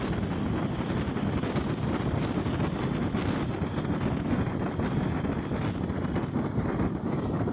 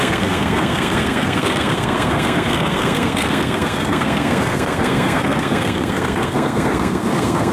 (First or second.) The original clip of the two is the first